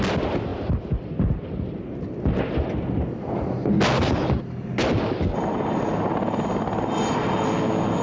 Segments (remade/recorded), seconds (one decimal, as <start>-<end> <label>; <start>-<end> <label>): 0.0-8.0 recorded